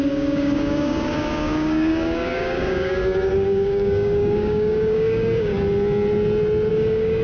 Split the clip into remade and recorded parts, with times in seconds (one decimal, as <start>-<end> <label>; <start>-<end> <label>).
0.0-5.5 remade; 5.5-6.7 recorded; 6.7-7.2 remade